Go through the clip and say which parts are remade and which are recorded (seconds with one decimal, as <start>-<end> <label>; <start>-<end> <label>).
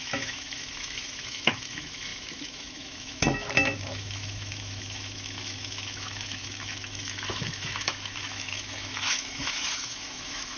0.0-10.6 remade